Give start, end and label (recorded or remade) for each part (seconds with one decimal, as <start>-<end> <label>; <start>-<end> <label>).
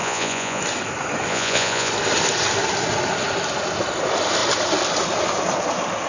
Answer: 0.0-0.6 remade; 0.6-1.3 recorded; 1.3-1.9 remade; 1.9-6.1 recorded